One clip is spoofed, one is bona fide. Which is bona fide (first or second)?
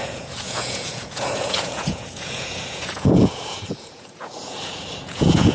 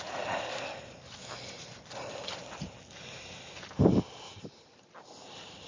second